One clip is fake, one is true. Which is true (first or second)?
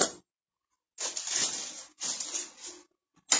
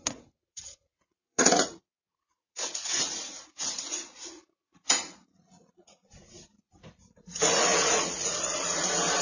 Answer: first